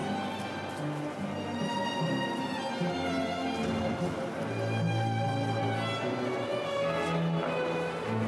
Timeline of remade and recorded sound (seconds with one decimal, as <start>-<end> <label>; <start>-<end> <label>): 0.0-8.3 recorded

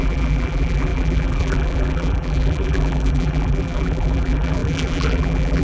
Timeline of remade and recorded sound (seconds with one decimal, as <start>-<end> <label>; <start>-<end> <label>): 0.0-5.6 remade

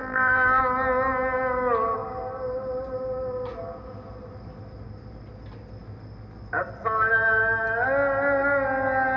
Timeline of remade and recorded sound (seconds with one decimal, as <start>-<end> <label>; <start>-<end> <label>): 0.0-0.6 remade; 0.6-9.2 recorded

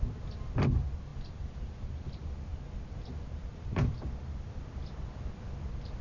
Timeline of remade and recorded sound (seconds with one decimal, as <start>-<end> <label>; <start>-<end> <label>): 0.0-1.1 recorded; 1.1-1.6 remade; 1.6-6.0 recorded

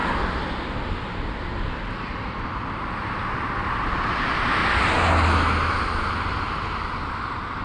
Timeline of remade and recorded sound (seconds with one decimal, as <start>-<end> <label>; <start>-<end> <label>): 0.0-2.4 recorded; 2.4-4.6 remade; 4.6-7.1 recorded; 7.1-7.6 remade